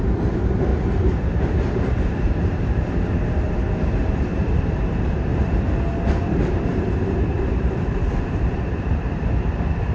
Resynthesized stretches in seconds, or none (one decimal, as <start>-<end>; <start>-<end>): 0.0-0.7; 1.4-5.3; 6.1-9.9